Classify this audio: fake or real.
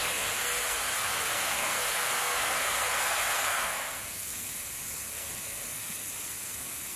fake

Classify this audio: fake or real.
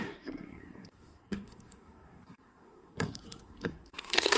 fake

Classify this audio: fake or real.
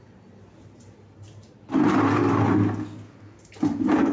real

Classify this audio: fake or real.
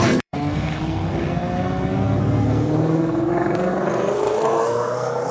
fake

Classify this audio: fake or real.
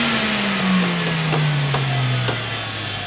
real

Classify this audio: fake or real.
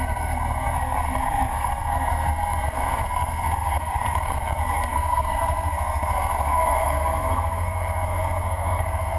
fake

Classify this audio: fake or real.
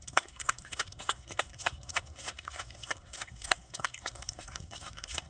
fake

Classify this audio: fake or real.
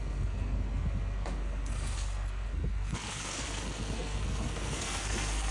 fake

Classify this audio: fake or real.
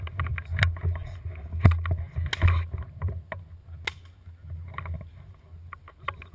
real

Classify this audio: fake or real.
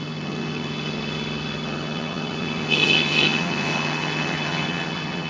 fake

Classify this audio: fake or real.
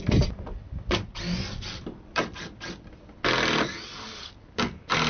real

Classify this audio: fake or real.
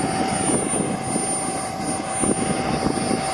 real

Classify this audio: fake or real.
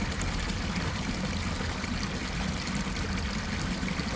real